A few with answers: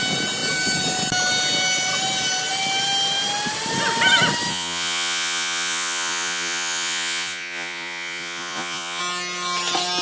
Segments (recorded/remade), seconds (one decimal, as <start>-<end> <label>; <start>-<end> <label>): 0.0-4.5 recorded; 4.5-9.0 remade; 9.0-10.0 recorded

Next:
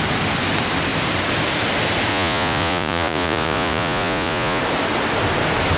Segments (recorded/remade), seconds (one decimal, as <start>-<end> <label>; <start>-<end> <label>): 0.0-2.1 recorded; 2.1-4.6 remade; 4.6-5.8 recorded

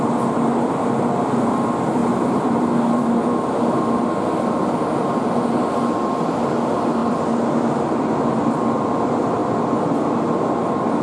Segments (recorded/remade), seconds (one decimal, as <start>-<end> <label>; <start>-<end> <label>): 0.0-2.0 recorded; 2.0-4.7 remade; 4.7-7.0 recorded; 7.0-7.7 remade; 7.7-11.0 recorded